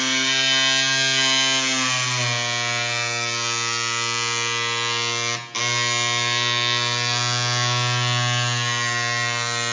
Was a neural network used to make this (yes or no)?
no